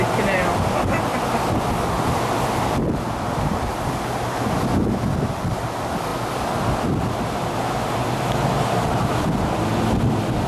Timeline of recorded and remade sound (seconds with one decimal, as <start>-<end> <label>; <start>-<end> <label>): 0.0-10.5 recorded